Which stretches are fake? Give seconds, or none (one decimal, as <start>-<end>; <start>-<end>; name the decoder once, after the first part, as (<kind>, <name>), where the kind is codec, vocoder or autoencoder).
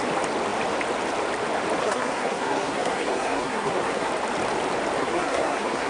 1.8-4.1 (codec, SNAC); 5.0-5.9